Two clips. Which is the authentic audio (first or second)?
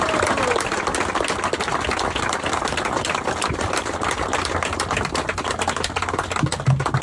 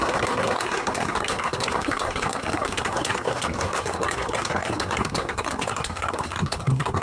first